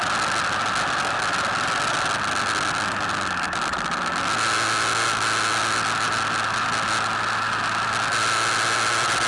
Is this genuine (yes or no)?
yes